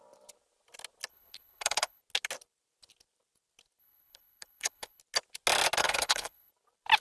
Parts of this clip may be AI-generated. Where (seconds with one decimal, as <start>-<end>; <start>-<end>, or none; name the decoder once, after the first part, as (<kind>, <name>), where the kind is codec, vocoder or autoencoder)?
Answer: 1.1-2.0 (codec, HILCodec); 3.8-5.0; 5.8-6.5